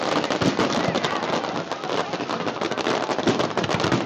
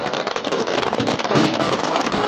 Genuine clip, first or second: first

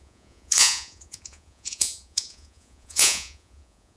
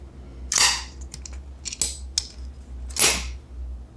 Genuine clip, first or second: second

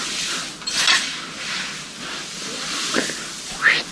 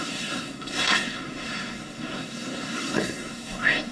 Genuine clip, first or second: first